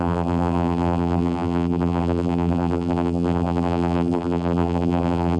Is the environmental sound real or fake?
fake